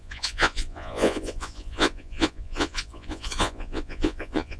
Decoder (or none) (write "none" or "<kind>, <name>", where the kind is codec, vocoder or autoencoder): vocoder, Vocos